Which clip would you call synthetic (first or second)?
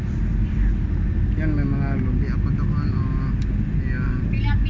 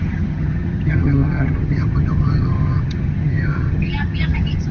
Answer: second